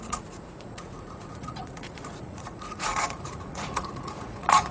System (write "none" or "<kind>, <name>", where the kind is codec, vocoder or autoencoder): vocoder, Vocos